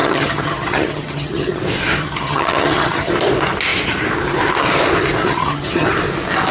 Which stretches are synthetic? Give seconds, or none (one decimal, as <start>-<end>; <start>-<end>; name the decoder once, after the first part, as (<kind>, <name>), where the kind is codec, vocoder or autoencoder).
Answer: 0.0-1.6 (vocoder, HiFi-GAN); 2.0-3.1; 5.2-5.9